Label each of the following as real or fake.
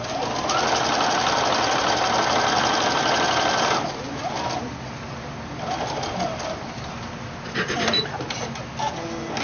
real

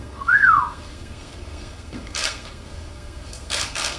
fake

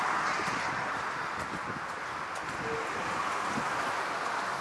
real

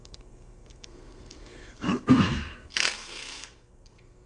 fake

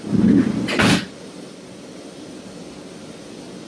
real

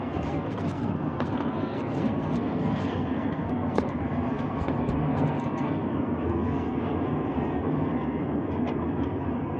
fake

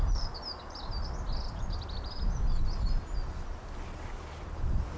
real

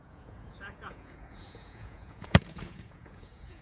fake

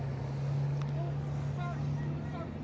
real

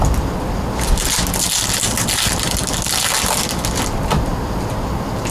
real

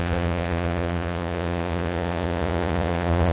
fake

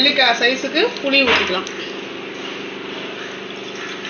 real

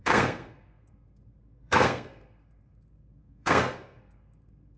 fake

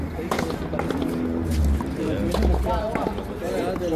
real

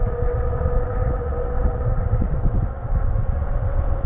fake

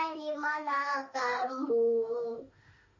fake